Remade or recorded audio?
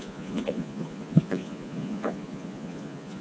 remade